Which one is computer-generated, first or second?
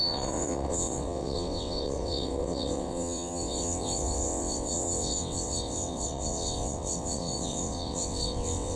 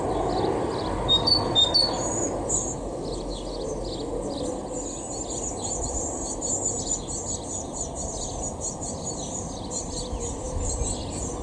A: first